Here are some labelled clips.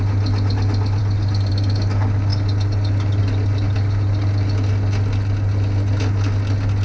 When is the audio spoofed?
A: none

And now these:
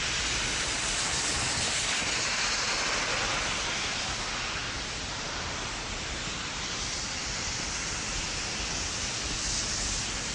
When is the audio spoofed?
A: none